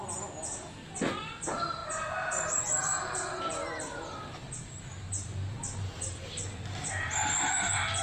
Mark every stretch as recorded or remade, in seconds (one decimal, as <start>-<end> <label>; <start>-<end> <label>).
0.0-8.0 recorded